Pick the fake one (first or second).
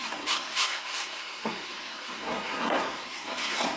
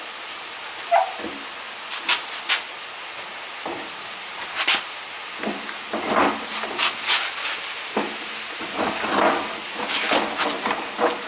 first